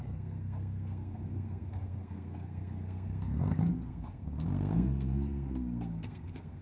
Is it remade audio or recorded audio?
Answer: remade